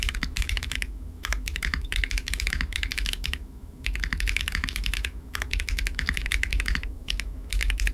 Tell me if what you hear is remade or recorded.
remade